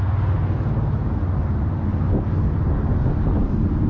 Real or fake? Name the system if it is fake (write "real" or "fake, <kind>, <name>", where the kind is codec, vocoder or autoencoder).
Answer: real